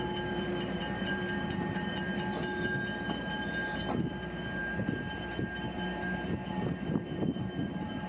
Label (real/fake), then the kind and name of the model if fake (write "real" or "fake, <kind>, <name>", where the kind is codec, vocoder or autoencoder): fake, vocoder, BigVGAN v2